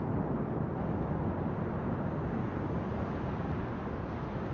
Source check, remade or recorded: recorded